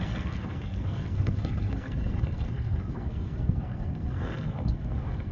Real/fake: fake